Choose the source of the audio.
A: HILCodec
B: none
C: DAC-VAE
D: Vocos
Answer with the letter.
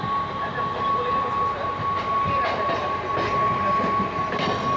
B